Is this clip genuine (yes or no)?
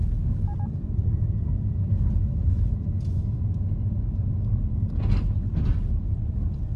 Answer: yes